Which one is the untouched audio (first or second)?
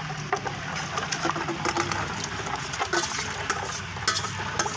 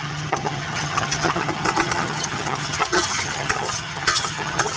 first